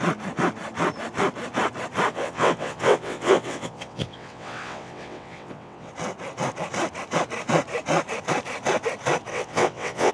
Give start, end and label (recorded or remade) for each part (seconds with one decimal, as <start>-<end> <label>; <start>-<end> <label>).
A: 0.0-2.1 recorded; 2.1-5.9 remade; 5.9-9.3 recorded; 9.3-10.1 remade